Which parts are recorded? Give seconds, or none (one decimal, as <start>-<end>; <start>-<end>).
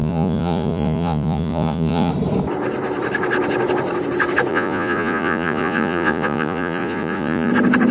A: 2.1-4.5; 7.5-7.9